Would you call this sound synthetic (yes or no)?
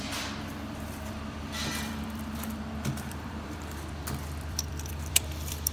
yes